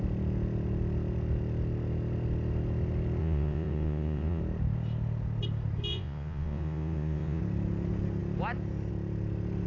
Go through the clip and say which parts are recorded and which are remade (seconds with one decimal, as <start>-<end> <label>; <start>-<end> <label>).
0.0-3.2 recorded; 3.2-4.4 remade; 4.4-5.9 recorded; 5.9-7.4 remade; 7.4-9.7 recorded